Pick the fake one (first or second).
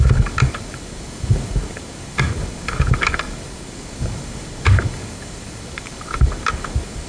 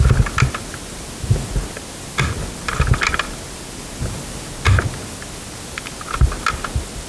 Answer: first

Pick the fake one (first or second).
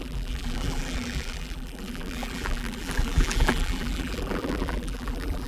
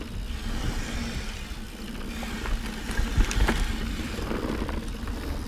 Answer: first